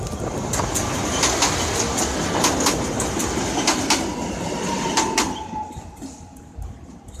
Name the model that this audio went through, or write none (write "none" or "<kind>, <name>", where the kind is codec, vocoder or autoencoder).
none